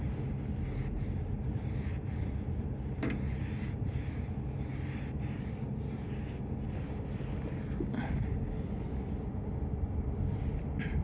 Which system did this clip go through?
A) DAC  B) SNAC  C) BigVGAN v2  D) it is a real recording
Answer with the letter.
D